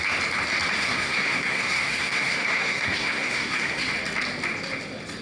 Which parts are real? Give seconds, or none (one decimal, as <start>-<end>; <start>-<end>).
0.0-0.8; 3.9-5.2